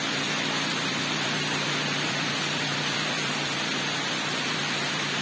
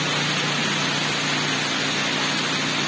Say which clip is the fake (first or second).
first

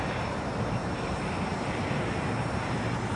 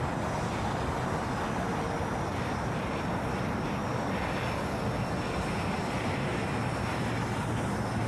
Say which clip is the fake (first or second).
first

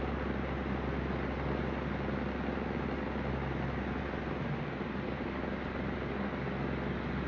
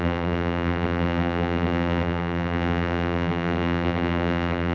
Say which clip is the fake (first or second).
second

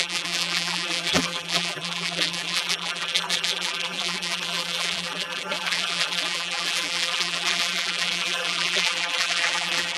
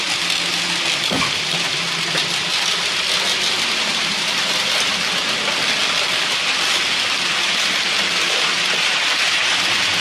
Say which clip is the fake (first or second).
first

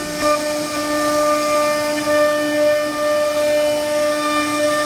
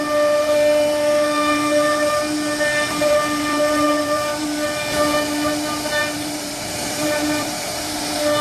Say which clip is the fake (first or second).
second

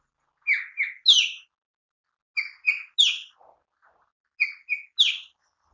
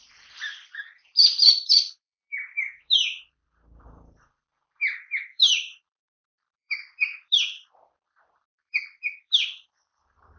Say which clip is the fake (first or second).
second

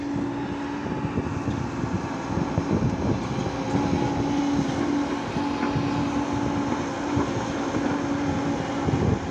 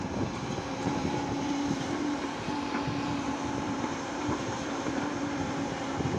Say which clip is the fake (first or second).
second